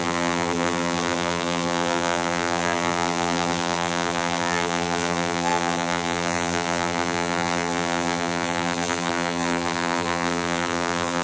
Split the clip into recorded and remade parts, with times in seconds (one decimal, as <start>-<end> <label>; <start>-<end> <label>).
0.0-11.2 remade